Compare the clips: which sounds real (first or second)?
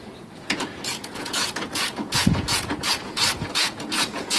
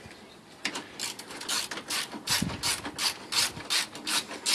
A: second